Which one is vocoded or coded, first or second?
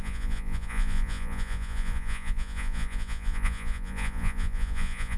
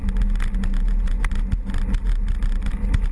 first